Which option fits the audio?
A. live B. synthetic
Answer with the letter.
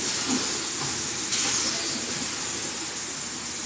A